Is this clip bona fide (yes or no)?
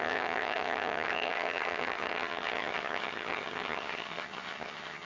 no